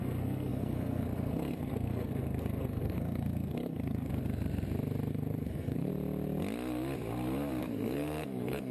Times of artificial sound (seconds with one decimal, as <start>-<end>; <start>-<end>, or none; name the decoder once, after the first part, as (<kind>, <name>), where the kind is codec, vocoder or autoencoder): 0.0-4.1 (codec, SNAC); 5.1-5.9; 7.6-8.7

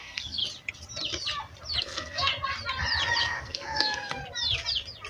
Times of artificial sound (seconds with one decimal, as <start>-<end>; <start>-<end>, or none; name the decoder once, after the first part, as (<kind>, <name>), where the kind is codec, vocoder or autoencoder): 0.0-0.4 (codec, SNAC); 1.8-2.3; 3.2-4.2

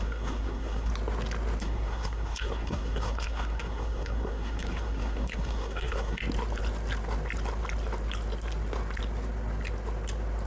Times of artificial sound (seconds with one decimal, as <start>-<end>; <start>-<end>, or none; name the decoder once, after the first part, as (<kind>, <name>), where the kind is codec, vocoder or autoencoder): 0.0-0.9 (codec, SNAC); 1.6-6.2

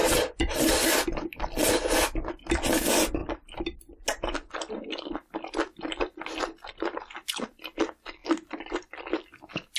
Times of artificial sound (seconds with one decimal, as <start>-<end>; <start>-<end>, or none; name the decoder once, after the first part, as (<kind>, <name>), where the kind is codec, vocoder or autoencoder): none

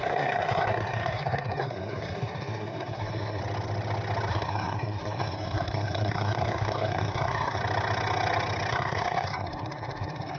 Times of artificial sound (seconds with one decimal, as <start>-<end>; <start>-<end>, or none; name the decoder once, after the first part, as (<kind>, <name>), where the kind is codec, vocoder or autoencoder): 0.0-3.4 (codec, SNAC); 4.3-7.6; 8.7-10.4

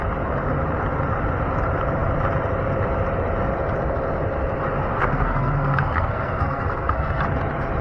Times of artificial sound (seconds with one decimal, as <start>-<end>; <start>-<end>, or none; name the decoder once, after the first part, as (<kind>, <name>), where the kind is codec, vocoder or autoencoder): 5.0-7.2 (codec, SNAC)

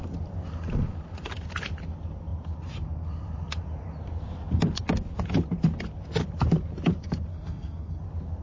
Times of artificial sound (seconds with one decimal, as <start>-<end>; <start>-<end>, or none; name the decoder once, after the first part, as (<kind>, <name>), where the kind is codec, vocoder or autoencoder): 7.3-8.0 (codec, SNAC)